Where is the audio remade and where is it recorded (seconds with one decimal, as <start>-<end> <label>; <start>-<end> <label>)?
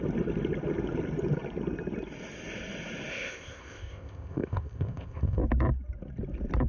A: 0.0-3.1 recorded; 3.1-5.4 remade; 5.4-6.7 recorded